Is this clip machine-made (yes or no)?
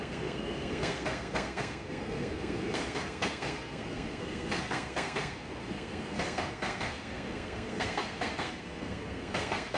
yes